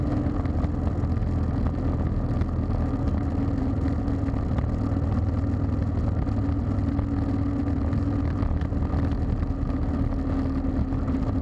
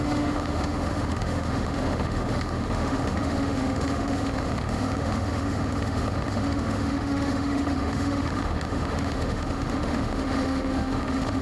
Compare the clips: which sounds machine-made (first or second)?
second